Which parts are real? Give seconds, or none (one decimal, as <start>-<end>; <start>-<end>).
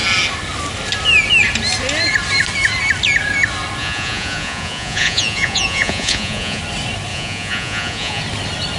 0.0-3.8; 6.6-7.1; 8.2-8.8